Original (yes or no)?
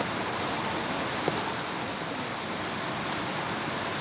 yes